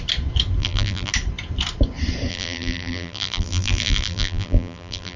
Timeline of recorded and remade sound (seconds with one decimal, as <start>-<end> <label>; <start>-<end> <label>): 0.0-0.6 recorded; 0.6-1.1 remade; 1.1-2.3 recorded; 2.3-5.2 remade